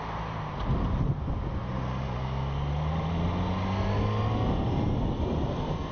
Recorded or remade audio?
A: recorded